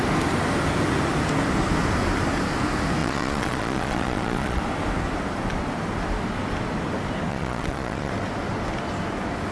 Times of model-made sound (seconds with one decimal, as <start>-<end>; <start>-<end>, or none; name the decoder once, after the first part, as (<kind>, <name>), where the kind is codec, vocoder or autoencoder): 3.0-4.6 (vocoder, Vocos); 7.3-8.1